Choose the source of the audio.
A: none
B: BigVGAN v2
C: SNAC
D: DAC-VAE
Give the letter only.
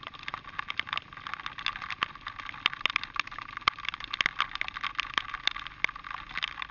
A